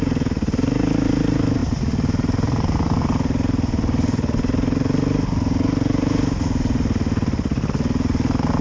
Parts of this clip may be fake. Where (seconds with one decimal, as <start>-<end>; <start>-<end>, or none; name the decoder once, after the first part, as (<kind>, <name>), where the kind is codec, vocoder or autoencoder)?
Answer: 1.6-3.0 (vocoder, BigVGAN v2)

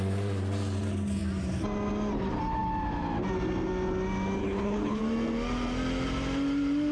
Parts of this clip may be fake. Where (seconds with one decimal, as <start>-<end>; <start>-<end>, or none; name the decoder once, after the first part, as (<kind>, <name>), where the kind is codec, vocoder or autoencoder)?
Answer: 4.4-5.0 (codec, HILCodec)